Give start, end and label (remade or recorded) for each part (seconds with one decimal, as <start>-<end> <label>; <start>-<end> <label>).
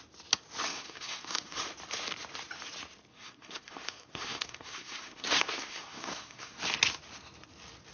0.0-0.7 recorded; 0.7-1.6 remade; 1.6-3.1 recorded; 3.1-6.6 remade; 6.6-7.9 recorded